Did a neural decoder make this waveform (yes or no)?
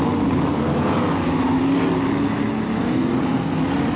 no